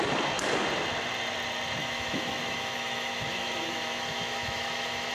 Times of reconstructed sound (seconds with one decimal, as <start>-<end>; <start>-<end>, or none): 1.8-5.1